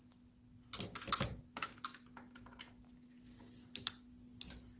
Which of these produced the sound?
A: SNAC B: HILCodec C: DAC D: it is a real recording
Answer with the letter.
D